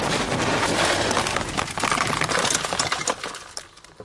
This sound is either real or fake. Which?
real